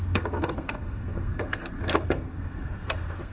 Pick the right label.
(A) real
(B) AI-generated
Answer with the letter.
B